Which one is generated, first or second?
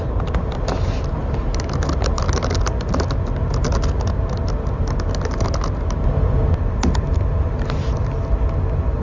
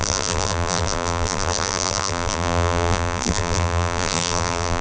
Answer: second